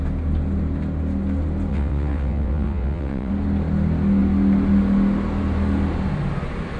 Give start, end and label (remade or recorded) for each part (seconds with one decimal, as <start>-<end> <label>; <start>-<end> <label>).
0.0-1.7 recorded; 1.7-3.3 remade; 3.3-6.8 recorded